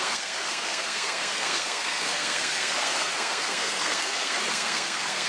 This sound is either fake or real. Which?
fake